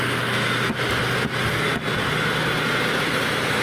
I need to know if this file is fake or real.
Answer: real